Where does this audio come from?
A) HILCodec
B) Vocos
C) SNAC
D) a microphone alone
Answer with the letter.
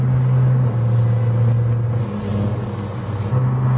D